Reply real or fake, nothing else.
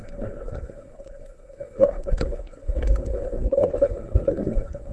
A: fake